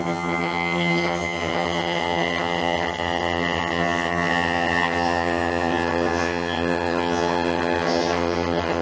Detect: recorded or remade remade